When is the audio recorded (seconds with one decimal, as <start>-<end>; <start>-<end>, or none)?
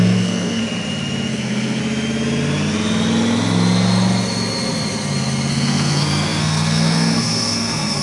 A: 0.6-1.3; 1.8-5.5